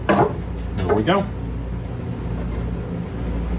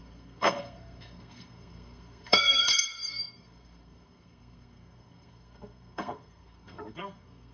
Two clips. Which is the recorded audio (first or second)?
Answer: first